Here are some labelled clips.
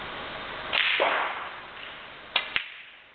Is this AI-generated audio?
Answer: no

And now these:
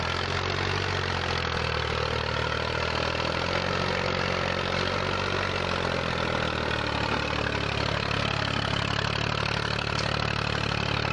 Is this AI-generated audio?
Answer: no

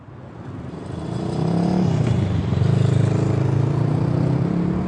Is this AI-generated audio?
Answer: no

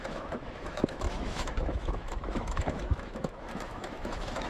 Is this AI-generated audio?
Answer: yes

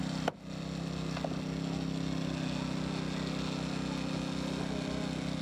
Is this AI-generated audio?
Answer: no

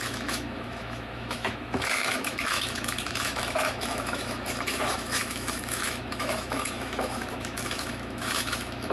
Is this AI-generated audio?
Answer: yes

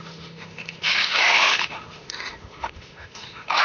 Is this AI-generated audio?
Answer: yes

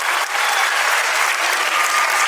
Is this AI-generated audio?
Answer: no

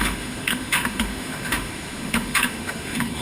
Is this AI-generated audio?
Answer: yes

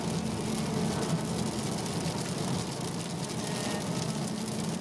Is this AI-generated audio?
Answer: no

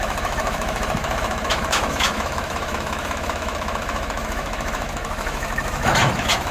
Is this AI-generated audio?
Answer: yes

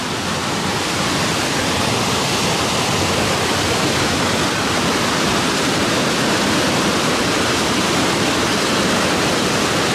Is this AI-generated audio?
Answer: no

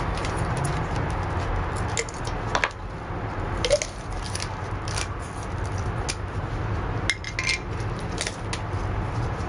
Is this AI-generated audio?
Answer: no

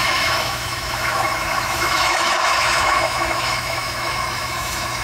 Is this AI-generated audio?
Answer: yes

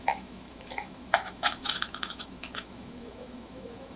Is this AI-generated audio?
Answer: yes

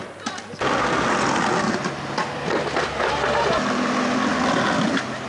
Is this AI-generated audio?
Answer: no